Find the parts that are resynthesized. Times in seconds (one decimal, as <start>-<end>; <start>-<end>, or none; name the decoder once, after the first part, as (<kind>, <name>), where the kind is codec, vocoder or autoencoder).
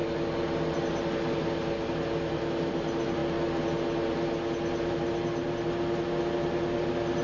none